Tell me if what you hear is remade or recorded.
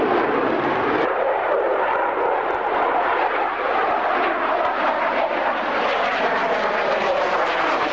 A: recorded